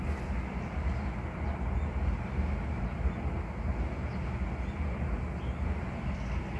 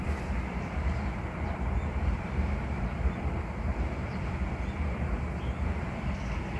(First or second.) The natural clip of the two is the first